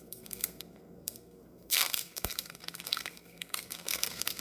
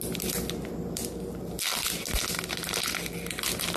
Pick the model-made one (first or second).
first